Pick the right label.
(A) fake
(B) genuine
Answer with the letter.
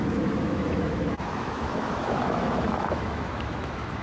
A